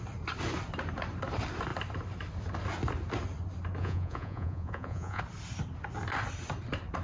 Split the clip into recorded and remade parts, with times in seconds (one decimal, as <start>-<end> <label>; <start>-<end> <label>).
0.0-3.8 recorded; 3.8-5.2 remade; 5.2-7.0 recorded